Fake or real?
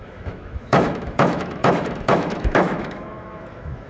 fake